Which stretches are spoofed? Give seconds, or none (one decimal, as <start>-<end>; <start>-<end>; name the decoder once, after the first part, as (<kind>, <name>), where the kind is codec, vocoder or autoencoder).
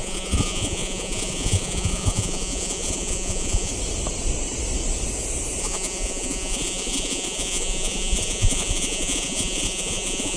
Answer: 0.0-3.7 (vocoder, Vocos); 5.6-10.4